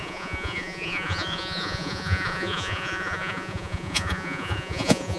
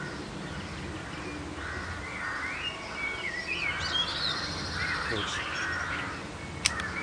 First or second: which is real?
second